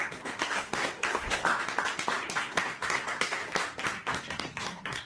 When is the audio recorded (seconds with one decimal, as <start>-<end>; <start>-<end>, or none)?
1.5-2.4; 3.4-4.2